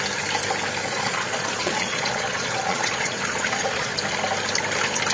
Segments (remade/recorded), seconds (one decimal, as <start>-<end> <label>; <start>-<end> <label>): 0.0-0.8 recorded; 0.8-3.9 remade; 3.9-5.1 recorded